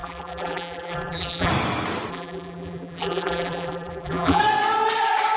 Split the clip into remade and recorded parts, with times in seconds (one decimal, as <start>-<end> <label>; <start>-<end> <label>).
0.0-1.5 remade; 1.5-2.1 recorded; 2.1-4.4 remade; 4.4-5.4 recorded